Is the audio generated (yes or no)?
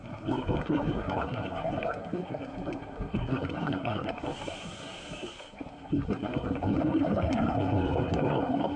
yes